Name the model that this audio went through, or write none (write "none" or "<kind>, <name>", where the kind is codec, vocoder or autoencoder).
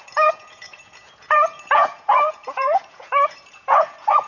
vocoder, Vocos